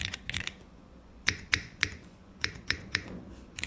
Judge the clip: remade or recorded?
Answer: remade